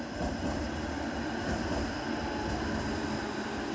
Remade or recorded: recorded